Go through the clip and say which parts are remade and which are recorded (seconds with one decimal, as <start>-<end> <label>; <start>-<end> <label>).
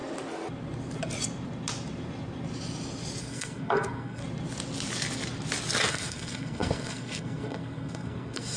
0.0-3.2 recorded; 3.2-4.2 remade; 4.2-5.9 recorded; 5.9-8.6 remade